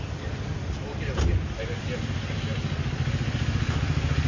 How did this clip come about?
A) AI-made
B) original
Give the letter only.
B